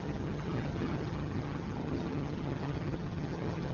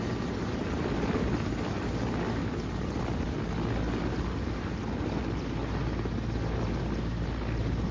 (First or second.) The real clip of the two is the second